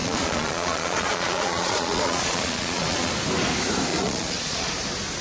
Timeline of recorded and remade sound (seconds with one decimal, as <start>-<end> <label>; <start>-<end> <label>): 0.0-3.1 remade; 3.1-3.9 recorded; 3.9-4.7 remade; 4.7-5.2 recorded